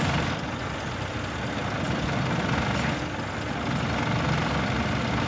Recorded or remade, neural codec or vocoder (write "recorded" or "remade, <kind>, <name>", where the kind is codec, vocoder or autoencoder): recorded